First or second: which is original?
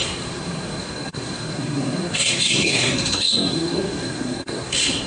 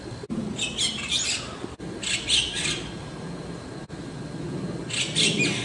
second